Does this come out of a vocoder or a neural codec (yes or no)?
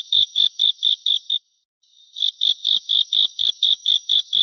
yes